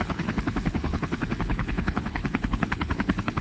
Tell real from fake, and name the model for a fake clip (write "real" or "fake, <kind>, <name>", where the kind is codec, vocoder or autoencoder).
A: fake, codec, HILCodec